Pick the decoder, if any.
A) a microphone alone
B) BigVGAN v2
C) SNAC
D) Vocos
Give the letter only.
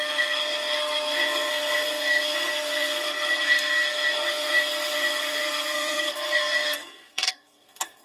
C